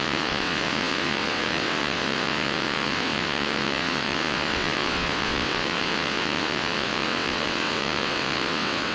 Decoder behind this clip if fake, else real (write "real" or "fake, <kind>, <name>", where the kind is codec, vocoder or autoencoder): fake, vocoder, WaveNeXt